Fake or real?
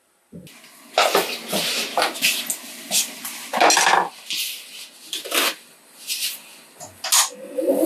real